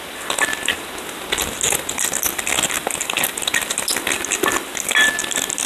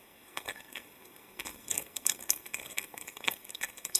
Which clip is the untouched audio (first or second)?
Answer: first